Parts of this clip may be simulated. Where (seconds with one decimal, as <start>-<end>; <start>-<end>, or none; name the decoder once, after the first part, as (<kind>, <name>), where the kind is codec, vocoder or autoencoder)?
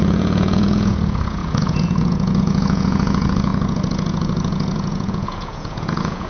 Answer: 0.0-6.3 (vocoder, Vocos)